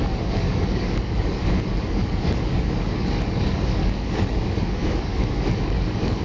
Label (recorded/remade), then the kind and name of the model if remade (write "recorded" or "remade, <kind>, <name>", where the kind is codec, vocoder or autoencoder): remade, codec, DAC